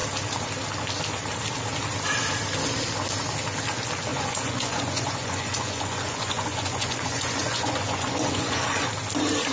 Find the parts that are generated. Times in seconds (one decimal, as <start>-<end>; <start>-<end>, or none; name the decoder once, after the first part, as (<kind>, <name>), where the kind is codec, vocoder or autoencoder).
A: 4.1-8.9 (vocoder, Vocos)